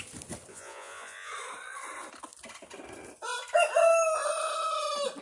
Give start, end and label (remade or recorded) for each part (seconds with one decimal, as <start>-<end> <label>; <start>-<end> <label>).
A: 0.0-0.5 recorded; 0.5-1.3 remade; 1.3-5.2 recorded